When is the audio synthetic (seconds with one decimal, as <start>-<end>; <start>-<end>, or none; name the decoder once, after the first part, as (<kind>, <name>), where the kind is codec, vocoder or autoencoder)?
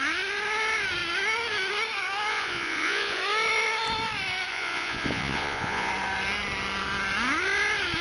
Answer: 2.3-3.2 (vocoder, Vocos); 4.5-5.9